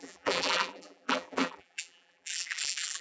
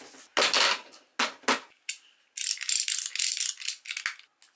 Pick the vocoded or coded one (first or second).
first